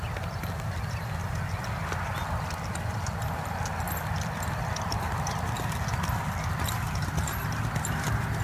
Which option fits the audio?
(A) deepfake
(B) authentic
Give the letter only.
B